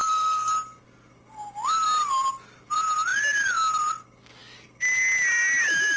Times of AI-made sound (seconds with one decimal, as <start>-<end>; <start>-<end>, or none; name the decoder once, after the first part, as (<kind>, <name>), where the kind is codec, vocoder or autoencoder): 0.0-0.5 (codec, SNAC)